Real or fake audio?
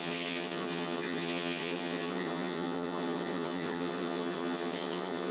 fake